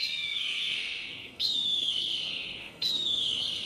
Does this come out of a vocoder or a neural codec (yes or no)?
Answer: yes